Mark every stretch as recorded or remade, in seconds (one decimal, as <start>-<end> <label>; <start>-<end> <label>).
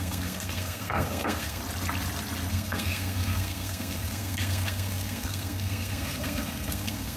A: 0.0-1.6 remade; 1.6-2.5 recorded; 2.5-7.2 remade